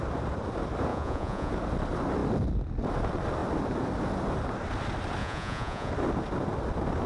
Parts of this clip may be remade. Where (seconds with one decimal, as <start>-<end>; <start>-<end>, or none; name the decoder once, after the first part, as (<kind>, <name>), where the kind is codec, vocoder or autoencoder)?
0.9-1.5 (vocoder, Vocos); 5.2-5.9